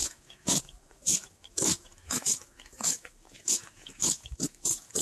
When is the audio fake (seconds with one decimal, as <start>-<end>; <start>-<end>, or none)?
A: 0.0-5.0